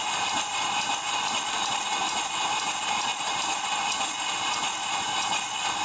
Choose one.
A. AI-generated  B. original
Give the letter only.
B